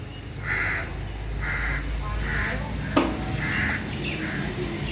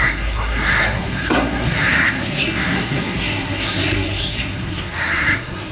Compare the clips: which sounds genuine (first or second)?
first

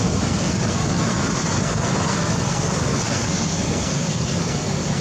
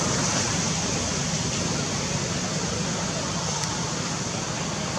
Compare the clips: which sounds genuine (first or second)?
second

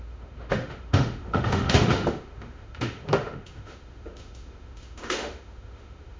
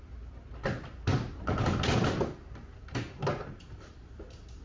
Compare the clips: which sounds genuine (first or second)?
second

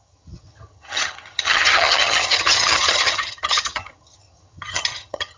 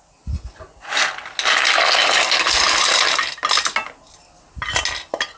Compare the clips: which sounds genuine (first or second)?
second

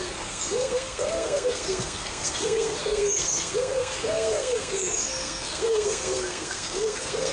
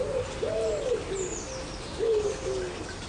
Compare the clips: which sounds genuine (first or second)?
second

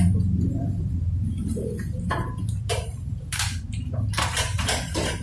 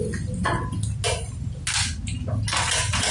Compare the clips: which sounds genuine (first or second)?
second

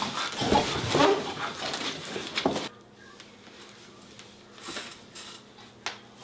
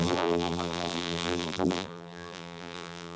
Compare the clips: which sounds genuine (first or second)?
first